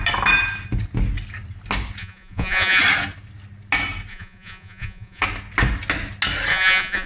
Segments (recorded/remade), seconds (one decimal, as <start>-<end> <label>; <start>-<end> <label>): 0.0-2.0 recorded; 2.0-2.8 remade; 2.8-4.1 recorded; 4.1-5.2 remade; 5.2-6.5 recorded; 6.5-7.1 remade

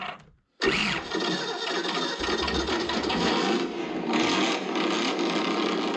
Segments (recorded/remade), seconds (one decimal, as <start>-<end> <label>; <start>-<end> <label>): 0.0-2.7 recorded; 2.7-3.3 remade; 3.3-6.0 recorded

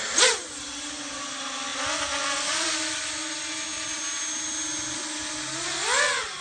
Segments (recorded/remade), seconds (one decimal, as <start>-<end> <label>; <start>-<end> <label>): 0.0-6.4 recorded

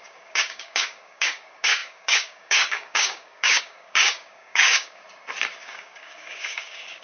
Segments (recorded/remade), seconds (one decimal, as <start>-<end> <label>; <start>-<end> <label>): 0.0-5.0 remade; 5.0-5.6 recorded; 5.6-7.0 remade

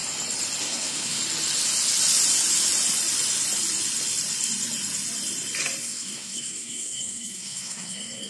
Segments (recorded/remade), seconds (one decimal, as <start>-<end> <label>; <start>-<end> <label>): 0.0-0.6 recorded; 0.6-1.2 remade; 1.2-5.8 recorded; 5.8-8.3 remade